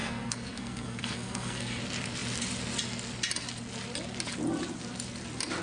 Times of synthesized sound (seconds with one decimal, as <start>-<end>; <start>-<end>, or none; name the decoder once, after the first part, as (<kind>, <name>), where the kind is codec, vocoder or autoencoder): 0.0-1.8 (codec, SNAC)